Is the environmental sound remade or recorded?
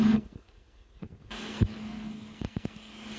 remade